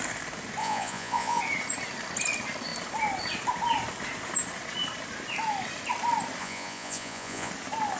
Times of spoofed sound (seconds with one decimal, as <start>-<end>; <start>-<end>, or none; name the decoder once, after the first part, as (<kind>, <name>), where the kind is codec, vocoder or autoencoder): 0.6-1.4 (vocoder, Vocos); 6.4-7.5